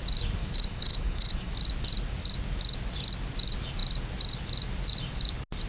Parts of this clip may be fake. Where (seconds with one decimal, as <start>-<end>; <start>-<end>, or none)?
0.4-1.5